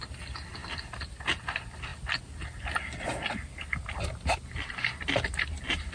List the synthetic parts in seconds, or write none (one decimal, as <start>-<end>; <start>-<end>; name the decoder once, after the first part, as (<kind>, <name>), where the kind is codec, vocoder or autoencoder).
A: none